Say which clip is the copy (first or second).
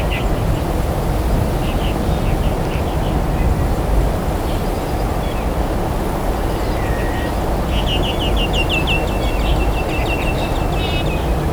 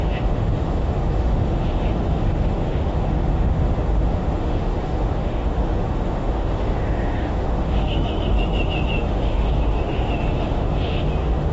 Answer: second